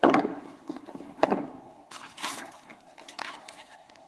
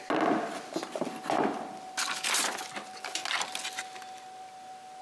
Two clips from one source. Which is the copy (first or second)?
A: first